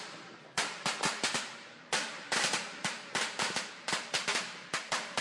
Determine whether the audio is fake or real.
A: fake